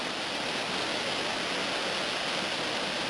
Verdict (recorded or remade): recorded